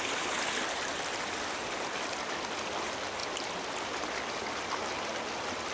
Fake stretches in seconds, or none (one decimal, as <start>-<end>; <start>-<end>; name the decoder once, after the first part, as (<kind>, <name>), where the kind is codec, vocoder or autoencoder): none